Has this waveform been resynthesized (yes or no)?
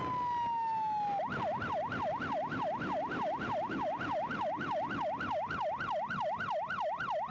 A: no